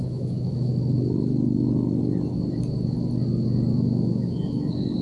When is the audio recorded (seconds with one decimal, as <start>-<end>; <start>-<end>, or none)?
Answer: 0.7-3.7